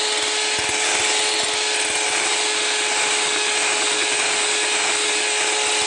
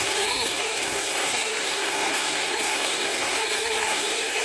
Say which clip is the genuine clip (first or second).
first